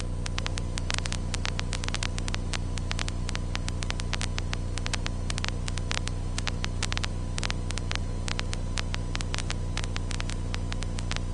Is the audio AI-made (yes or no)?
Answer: no